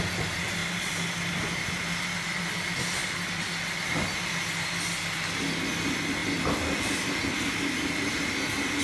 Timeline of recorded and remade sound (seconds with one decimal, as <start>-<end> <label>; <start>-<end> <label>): 0.0-0.6 recorded; 0.6-1.4 remade; 1.4-3.0 recorded; 3.0-4.3 remade; 4.3-6.2 recorded; 6.2-7.2 remade; 7.2-8.8 recorded